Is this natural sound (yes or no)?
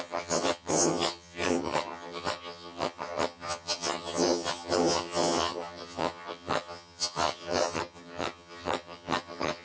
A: no